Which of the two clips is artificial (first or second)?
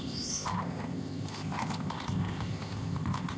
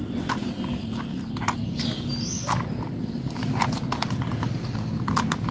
first